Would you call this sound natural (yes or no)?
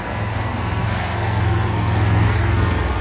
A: no